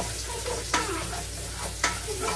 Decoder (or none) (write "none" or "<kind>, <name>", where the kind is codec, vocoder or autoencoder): none